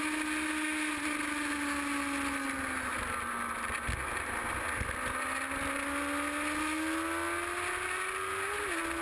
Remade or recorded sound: recorded